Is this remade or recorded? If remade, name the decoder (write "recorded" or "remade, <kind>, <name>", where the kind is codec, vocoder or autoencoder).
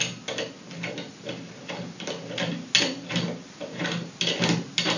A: recorded